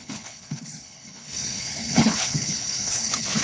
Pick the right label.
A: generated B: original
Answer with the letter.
A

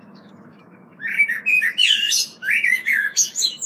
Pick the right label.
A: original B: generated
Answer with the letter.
B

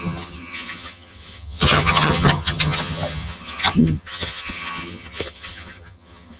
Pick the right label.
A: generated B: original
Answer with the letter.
A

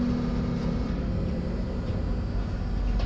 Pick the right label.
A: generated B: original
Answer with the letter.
B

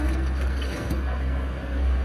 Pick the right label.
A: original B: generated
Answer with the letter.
B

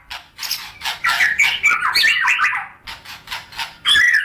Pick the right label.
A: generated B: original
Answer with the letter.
B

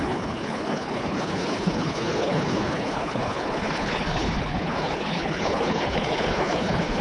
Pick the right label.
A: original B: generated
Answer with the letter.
B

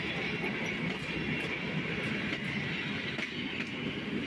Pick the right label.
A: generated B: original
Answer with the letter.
B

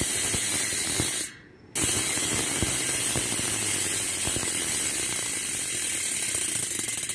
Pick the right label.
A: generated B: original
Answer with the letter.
B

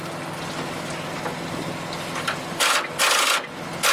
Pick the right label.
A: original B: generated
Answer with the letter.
A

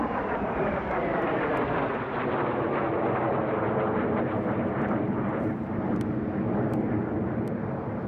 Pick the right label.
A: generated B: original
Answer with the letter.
B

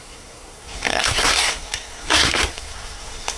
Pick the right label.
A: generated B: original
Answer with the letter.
A